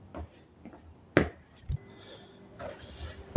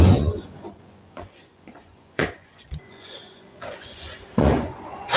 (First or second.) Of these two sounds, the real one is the first